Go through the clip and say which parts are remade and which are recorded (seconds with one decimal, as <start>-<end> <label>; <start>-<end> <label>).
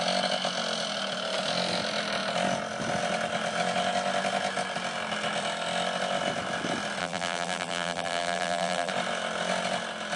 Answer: 0.0-7.0 recorded; 7.0-8.9 remade; 8.9-10.2 recorded